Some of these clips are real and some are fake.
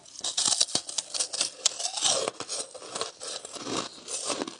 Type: real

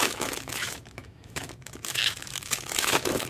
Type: fake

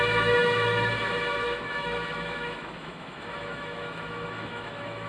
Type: fake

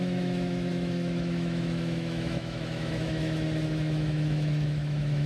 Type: fake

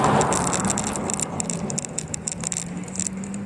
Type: real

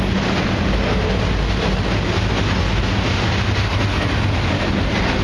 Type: real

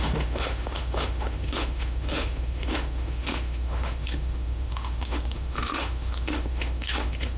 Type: fake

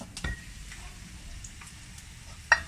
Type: real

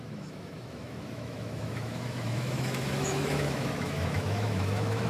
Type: fake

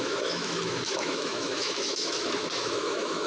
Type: fake